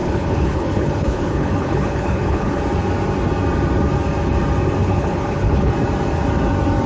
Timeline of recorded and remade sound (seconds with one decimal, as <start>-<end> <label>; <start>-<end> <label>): 0.0-2.6 remade; 2.6-4.8 recorded; 4.8-5.7 remade; 5.7-6.9 recorded